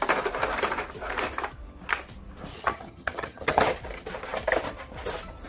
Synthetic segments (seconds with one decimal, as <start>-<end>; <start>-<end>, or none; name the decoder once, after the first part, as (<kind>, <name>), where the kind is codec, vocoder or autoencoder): 2.5-3.6 (vocoder, HiFi-GAN)